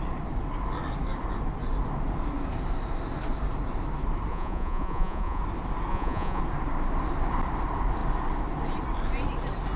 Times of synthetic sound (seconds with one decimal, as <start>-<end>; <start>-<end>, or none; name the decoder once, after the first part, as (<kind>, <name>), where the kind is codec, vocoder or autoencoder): 4.3-5.4 (vocoder, Vocos); 5.9-6.4